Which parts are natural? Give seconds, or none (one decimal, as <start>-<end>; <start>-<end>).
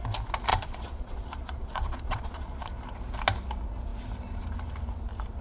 0.0-0.5; 2.7-5.4